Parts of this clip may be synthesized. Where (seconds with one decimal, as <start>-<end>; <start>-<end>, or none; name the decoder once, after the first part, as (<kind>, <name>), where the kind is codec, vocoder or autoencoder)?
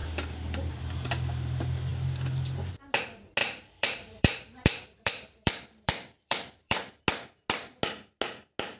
0.0-0.7 (vocoder, BigVGAN v2); 3.4-7.0